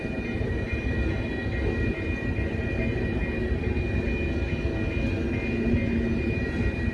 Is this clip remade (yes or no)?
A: no